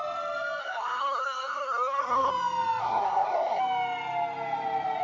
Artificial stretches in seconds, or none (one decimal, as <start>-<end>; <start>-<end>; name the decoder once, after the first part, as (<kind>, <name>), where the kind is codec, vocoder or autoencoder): 0.6-2.3 (codec, SNAC); 2.8-3.6